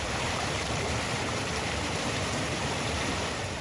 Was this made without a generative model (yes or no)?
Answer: no